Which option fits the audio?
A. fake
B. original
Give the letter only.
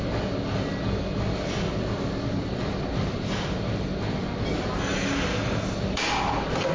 B